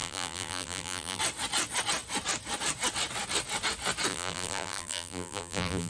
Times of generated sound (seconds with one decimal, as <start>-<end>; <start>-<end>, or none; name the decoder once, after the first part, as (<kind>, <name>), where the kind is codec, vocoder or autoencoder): 0.0-1.2 (vocoder, BigVGAN v2); 4.1-5.9